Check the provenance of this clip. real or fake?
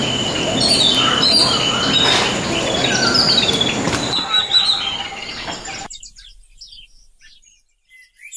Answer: real